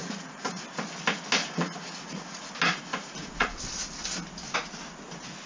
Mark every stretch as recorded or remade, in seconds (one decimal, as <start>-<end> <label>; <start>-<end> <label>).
0.0-0.6 remade; 0.6-1.4 recorded; 1.4-2.5 remade; 2.5-2.9 recorded; 2.9-3.6 remade; 3.6-5.5 recorded